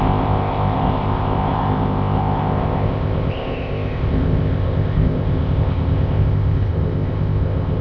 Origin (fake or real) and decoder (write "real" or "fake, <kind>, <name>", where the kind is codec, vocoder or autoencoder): fake, codec, ZipCodec